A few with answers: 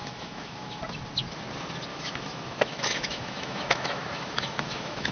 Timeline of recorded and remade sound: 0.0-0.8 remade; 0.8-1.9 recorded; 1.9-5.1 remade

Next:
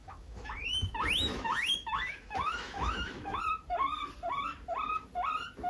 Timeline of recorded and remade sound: 0.0-3.4 remade; 3.4-5.7 recorded

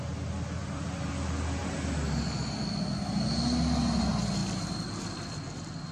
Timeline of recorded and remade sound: 0.0-5.9 recorded

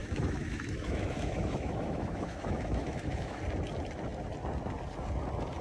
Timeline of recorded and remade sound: 0.0-3.4 remade; 3.4-5.6 recorded

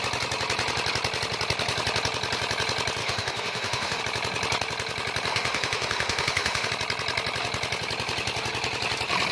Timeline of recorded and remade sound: 0.0-3.0 recorded; 3.0-4.0 remade; 4.0-5.3 recorded; 5.3-6.7 remade; 6.7-9.3 recorded

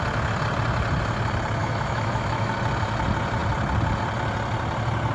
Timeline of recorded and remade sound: 0.0-1.6 recorded; 1.6-2.5 remade; 2.5-5.1 recorded